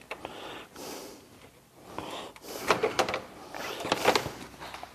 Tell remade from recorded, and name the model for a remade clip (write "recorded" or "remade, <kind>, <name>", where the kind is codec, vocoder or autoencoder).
recorded